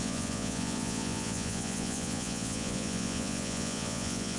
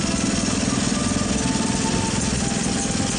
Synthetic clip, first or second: first